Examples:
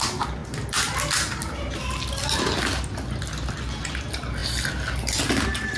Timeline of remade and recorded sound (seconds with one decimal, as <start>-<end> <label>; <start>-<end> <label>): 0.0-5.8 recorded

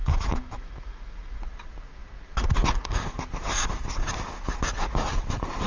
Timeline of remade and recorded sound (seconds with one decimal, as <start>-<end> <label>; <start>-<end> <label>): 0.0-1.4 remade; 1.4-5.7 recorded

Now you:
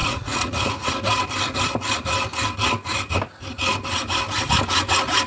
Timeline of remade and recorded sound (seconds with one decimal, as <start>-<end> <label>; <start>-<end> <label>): 0.0-0.9 remade; 0.9-5.3 recorded